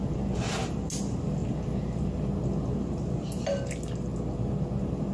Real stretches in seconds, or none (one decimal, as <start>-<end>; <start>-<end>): 0.0-5.1